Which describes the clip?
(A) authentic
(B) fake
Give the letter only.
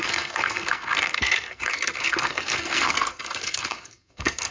B